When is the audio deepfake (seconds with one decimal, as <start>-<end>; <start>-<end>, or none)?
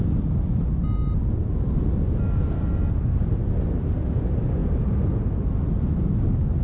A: none